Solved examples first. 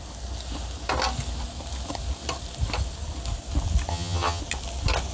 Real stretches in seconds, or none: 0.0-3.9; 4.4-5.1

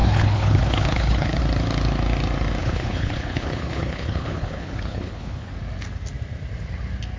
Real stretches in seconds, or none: 1.4-2.6; 5.5-7.2

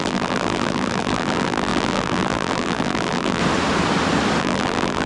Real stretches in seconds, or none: 3.4-4.4

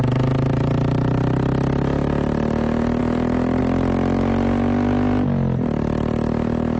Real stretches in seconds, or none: 0.0-6.8

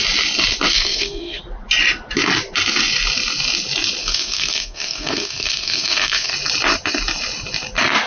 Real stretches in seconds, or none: 0.0-0.7; 1.4-4.0; 6.3-8.1

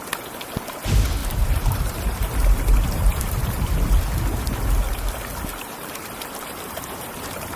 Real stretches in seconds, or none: 0.0-1.2; 3.7-5.5

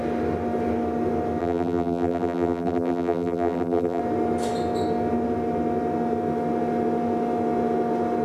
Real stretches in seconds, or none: 0.0-1.4; 4.0-8.2